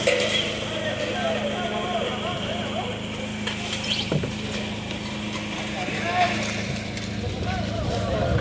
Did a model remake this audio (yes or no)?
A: no